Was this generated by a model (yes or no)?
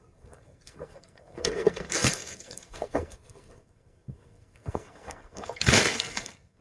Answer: yes